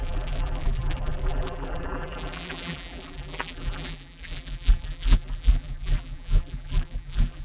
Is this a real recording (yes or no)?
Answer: no